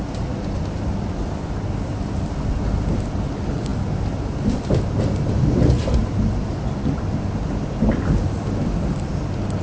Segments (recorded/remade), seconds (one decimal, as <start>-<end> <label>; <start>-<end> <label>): 0.0-9.6 recorded